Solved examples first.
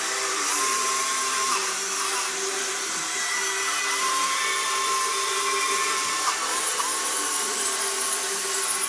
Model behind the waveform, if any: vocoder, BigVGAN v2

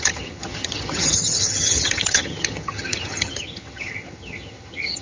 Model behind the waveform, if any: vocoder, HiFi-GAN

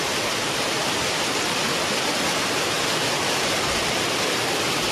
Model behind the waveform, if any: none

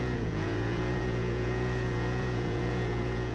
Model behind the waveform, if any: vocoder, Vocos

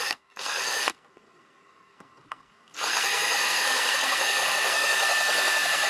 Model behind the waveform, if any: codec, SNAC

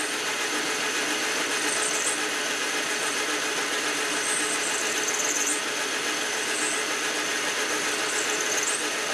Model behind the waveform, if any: none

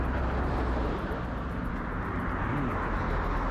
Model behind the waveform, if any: none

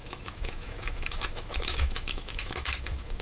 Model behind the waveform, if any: autoencoder, DAC-VAE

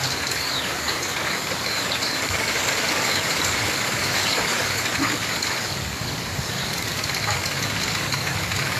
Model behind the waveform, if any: codec, DAC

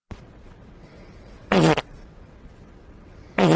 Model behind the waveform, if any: vocoder, WaveNeXt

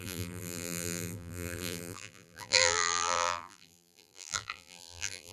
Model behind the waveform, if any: vocoder, BigVGAN v2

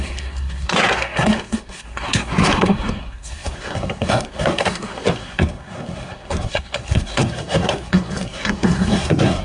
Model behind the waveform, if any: codec, SNAC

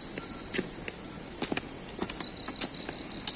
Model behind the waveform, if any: none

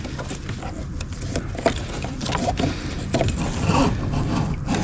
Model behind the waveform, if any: none